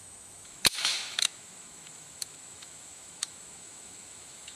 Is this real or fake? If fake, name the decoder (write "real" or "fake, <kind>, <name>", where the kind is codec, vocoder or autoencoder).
fake, autoencoder, DAC-VAE